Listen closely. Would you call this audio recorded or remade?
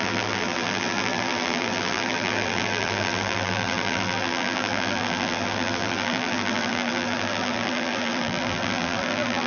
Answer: remade